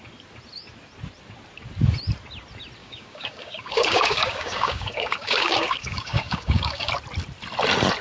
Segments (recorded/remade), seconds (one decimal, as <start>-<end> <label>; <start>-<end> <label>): 0.0-2.8 recorded; 2.8-6.9 remade; 6.9-8.0 recorded